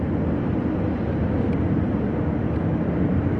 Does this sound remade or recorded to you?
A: recorded